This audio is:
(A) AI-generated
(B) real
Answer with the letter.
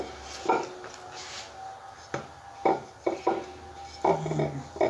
B